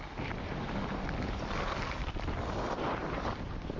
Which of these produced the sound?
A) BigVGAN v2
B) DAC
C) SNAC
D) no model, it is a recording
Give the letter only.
D